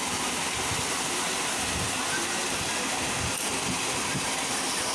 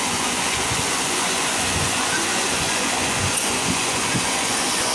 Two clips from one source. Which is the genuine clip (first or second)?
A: first